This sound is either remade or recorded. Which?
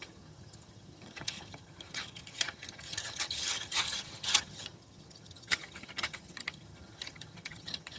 remade